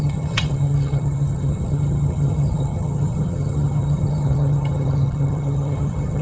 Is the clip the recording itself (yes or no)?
no